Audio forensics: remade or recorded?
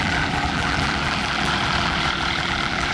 remade